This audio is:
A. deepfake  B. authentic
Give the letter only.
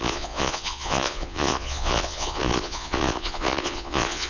A